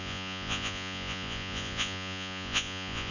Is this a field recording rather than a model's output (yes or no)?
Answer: no